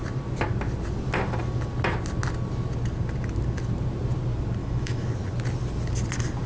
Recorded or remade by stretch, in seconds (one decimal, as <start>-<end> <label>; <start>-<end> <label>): 0.0-4.6 recorded; 4.6-5.1 remade; 5.1-6.5 recorded